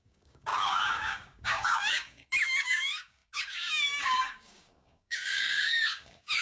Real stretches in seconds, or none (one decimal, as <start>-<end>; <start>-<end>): none